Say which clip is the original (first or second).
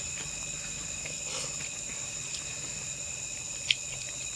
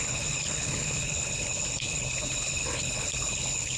first